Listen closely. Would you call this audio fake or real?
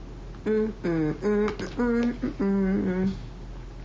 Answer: real